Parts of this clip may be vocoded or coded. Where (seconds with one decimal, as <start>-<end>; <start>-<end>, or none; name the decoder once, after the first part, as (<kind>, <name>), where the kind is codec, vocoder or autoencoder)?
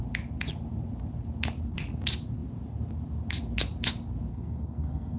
4.3-5.2 (codec, SNAC)